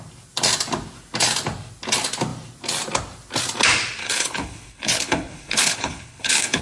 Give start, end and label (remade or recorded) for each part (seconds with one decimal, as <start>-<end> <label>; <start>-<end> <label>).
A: 0.0-4.0 recorded; 4.0-6.6 remade